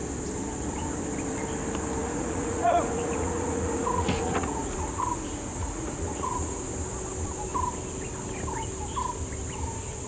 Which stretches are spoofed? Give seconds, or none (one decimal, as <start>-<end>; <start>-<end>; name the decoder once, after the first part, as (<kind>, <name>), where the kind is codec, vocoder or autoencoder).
2.0-6.7 (vocoder, Vocos)